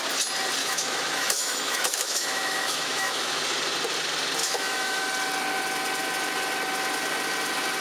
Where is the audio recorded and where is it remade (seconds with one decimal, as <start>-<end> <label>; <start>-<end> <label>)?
0.0-0.6 recorded; 0.6-3.4 remade; 3.4-4.4 recorded; 4.4-5.0 remade; 5.0-7.8 recorded